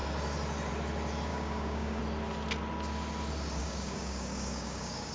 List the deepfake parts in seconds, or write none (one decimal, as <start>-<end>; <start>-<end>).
1.3-2.0; 3.6-5.1